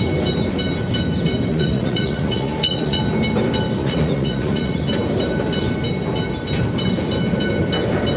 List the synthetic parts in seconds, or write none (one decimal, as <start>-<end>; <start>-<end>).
1.5-3.0; 3.8-4.9